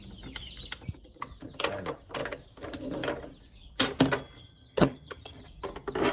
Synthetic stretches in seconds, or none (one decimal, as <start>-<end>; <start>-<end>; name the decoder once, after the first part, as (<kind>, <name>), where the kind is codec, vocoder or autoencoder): 4.4-5.4 (vocoder, HiFi-GAN)